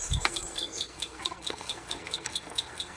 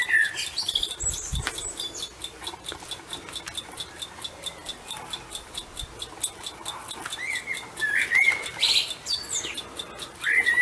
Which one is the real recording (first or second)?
second